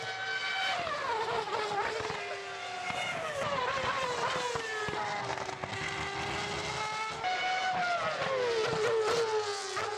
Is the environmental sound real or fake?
real